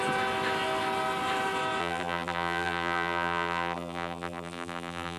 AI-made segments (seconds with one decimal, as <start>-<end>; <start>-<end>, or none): 1.8-5.2